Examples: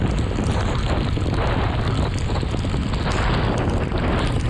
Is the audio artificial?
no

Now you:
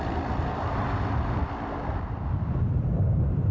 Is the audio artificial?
no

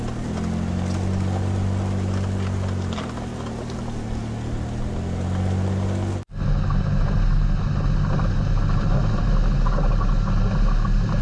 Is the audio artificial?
no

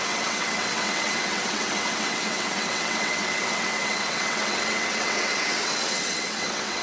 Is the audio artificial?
yes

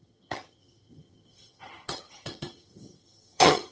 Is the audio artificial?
yes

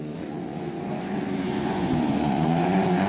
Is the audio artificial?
yes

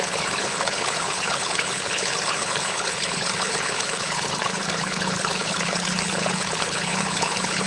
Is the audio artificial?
yes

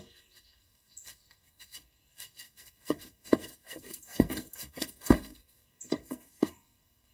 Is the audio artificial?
yes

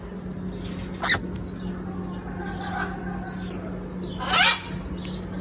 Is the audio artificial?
no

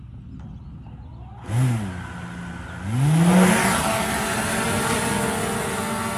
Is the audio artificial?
no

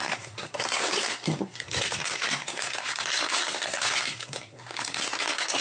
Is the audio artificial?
yes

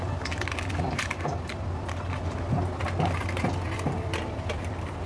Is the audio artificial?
yes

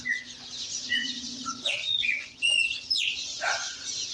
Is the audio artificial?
yes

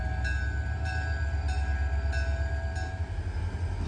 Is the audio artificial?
no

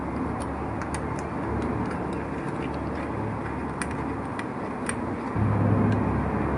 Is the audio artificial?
no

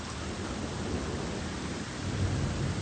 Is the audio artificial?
no